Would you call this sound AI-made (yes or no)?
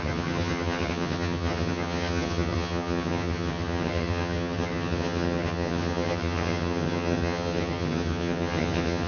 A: yes